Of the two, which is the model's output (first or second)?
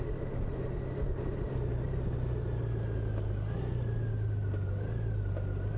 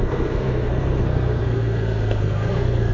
second